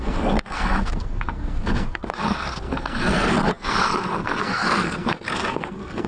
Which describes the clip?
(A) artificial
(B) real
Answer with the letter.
A